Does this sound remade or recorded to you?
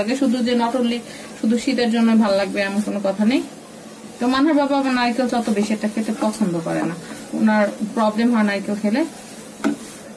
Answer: recorded